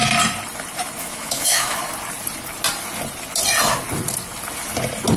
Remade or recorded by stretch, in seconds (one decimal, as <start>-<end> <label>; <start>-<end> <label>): 0.0-1.0 recorded; 1.0-1.8 remade; 1.8-5.2 recorded